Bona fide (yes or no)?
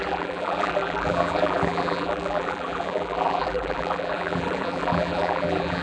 no